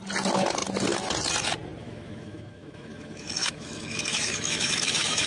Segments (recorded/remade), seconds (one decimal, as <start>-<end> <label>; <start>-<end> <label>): 0.0-1.8 recorded; 1.8-5.3 remade